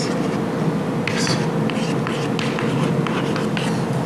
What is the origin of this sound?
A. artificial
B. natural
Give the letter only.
B